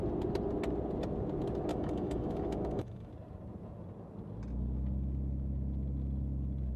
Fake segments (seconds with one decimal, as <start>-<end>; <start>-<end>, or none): 1.7-3.1